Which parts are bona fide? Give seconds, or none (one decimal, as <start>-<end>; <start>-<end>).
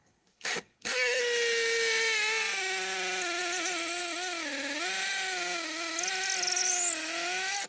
1.2-7.7